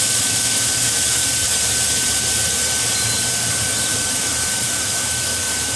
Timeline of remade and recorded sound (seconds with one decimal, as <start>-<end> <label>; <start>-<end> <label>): 0.0-1.2 remade; 1.2-3.8 recorded; 3.8-5.8 remade